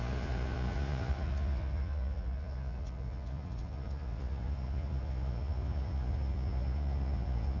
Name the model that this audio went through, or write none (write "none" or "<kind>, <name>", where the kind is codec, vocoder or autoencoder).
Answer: vocoder, Vocos